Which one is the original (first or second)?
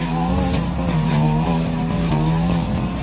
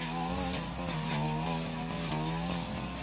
second